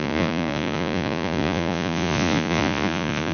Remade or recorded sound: remade